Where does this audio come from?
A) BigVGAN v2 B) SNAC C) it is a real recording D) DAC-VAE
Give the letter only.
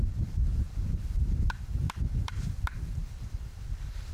A